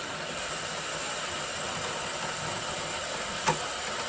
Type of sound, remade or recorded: recorded